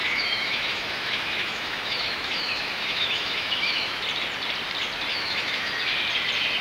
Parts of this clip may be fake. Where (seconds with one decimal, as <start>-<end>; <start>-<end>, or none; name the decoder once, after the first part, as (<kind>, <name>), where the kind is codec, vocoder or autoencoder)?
0.0-4.0 (autoencoder, DAC-VAE); 5.1-5.7